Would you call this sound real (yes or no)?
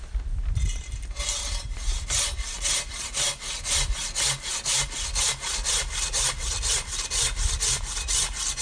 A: yes